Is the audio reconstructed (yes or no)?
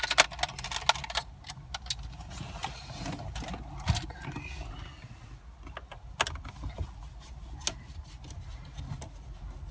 no